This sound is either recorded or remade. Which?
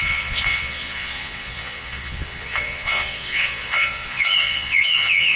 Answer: remade